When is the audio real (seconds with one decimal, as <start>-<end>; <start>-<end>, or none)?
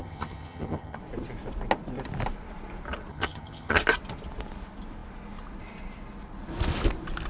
1.0-3.1; 3.8-7.3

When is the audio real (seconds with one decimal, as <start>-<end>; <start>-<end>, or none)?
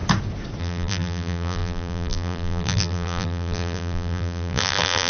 0.0-0.6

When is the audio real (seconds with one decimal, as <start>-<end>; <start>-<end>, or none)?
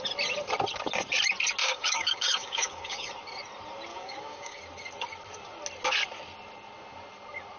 0.0-1.6; 3.1-3.9; 4.6-7.6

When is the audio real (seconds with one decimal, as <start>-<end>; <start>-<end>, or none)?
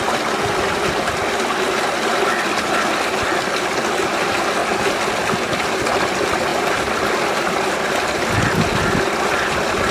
0.0-9.9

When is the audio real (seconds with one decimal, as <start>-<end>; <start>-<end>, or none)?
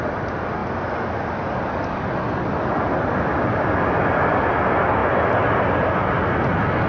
0.0-6.9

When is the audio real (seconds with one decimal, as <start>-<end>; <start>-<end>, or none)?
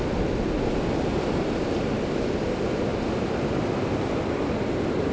0.0-2.9; 4.1-5.1